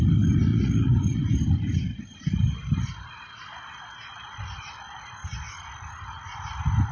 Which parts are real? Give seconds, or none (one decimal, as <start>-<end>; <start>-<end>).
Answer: 0.0-0.5; 1.3-6.9